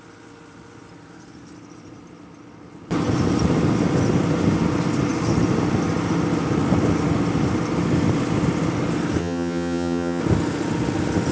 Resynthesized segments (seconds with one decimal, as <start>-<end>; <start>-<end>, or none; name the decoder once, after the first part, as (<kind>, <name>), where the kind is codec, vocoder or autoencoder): 9.2-10.2 (vocoder, HiFi-GAN)